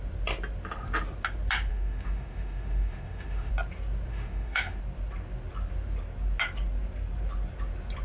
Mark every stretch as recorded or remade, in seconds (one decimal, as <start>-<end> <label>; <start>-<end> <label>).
0.0-1.7 recorded; 1.7-3.5 remade; 3.5-4.1 recorded; 4.1-4.8 remade; 4.8-8.0 recorded